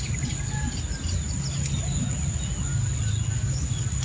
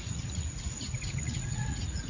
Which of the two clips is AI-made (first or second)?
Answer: second